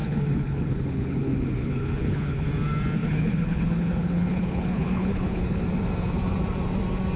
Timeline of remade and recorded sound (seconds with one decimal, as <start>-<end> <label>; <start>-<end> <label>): 0.0-2.5 remade; 2.5-3.0 recorded; 3.0-5.6 remade; 5.6-7.2 recorded